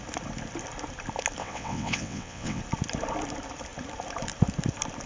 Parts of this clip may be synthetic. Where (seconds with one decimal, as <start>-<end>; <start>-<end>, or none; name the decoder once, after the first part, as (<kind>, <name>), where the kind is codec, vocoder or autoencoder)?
1.4-2.6 (vocoder, WaveNeXt)